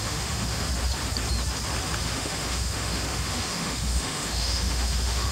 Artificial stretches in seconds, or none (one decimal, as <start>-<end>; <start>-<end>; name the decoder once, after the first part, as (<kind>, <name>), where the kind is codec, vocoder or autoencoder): 0.0-0.7 (autoencoder, DAC-VAE); 2.0-5.3